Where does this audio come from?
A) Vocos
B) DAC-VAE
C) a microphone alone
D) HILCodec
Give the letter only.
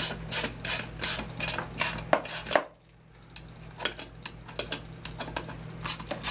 C